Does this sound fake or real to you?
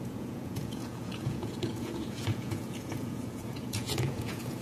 fake